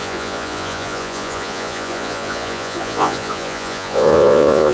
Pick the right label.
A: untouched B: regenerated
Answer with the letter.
B